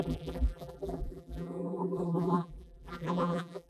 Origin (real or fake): fake